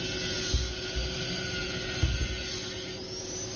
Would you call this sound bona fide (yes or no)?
yes